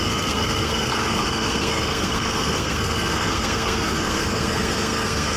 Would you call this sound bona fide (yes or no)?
no